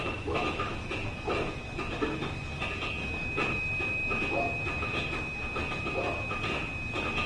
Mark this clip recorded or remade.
remade